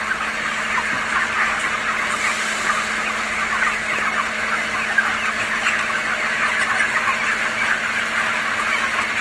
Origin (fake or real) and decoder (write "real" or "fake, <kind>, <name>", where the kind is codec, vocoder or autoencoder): real